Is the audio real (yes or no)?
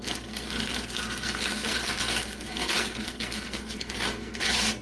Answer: no